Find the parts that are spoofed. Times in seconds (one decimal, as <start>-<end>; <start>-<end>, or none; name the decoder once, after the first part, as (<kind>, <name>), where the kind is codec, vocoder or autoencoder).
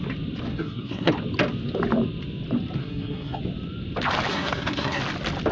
0.5-1.1 (codec, SNAC); 2.8-3.4; 4.3-5.0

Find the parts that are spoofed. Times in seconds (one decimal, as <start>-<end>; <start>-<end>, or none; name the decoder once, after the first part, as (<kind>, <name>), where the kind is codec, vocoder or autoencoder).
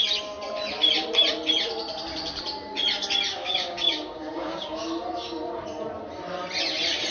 3.3-4.8 (codec, DAC)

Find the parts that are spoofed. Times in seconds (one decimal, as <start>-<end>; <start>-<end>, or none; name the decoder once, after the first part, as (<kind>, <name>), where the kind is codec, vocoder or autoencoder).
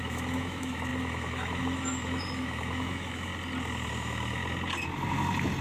0.0-3.3 (autoencoder, DAC-VAE); 3.9-4.4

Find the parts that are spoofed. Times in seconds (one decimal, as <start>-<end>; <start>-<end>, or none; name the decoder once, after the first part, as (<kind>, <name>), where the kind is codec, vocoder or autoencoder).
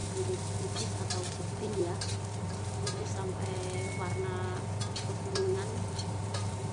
1.3-3.0 (vocoder, BigVGAN v2); 4.8-6.7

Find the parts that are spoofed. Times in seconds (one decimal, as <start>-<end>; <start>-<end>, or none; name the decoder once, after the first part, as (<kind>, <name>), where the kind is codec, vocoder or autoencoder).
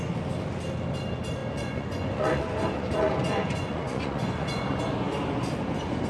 1.4-4.8 (vocoder, Vocos)